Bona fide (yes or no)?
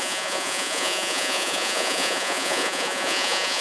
no